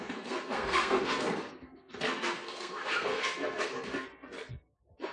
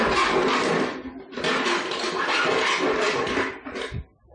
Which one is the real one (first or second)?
second